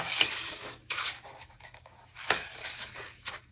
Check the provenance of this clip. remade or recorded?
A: remade